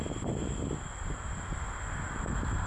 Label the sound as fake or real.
real